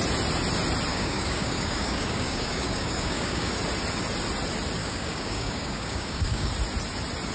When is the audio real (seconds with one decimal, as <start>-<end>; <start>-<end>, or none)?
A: 0.0-0.9; 3.5-4.8; 6.5-7.3